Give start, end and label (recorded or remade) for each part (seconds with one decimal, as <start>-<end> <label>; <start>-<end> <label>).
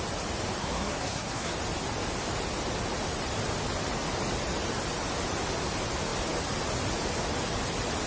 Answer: 0.0-0.6 recorded; 0.6-1.5 remade; 1.5-8.1 recorded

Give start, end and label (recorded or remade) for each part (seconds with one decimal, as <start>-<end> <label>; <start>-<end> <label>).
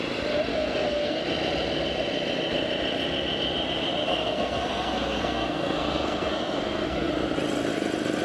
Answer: 0.0-0.5 recorded; 0.5-1.2 remade; 1.2-4.1 recorded; 4.1-7.1 remade; 7.1-8.2 recorded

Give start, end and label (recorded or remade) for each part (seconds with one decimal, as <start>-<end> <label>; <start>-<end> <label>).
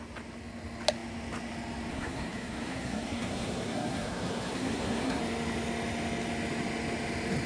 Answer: 0.0-1.9 recorded; 1.9-5.2 remade; 5.2-7.5 recorded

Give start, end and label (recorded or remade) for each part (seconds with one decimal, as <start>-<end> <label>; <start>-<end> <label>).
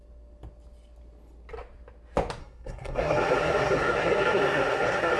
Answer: 0.0-2.4 recorded; 2.4-5.2 remade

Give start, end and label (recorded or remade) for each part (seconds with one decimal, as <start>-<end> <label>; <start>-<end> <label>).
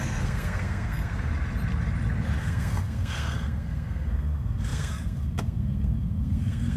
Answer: 0.0-1.3 remade; 1.3-2.4 recorded; 2.4-6.8 remade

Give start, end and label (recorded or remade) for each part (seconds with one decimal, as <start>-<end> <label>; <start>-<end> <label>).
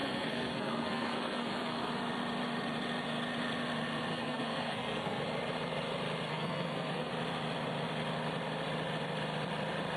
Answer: 0.0-1.9 remade; 1.9-4.1 recorded; 4.1-5.2 remade; 5.2-6.3 recorded; 6.3-7.1 remade; 7.1-10.0 recorded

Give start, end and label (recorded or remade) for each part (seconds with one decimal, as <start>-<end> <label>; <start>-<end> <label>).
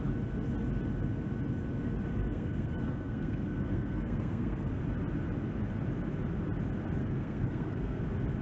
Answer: 0.0-2.1 recorded; 2.1-4.8 remade; 4.8-7.0 recorded; 7.0-8.0 remade; 8.0-8.4 recorded